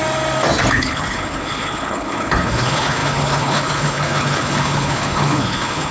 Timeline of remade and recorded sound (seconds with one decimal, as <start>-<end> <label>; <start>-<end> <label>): 0.0-0.7 recorded; 0.7-5.9 remade